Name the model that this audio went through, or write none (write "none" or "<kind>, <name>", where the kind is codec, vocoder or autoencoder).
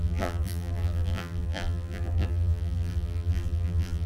vocoder, BigVGAN v2